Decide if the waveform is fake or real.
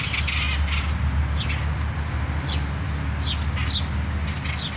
real